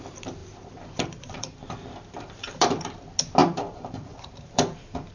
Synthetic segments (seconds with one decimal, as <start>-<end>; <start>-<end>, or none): 0.4-3.0; 3.4-5.1